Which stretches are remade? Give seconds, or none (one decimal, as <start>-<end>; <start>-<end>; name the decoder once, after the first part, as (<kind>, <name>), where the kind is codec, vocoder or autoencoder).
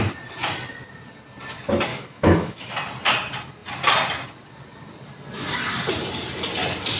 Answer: 1.9-2.6 (autoencoder, DAC-VAE)